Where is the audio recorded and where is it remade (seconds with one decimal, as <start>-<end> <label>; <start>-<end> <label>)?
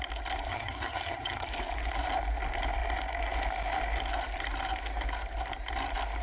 0.0-0.5 recorded; 0.5-1.5 remade; 1.5-6.2 recorded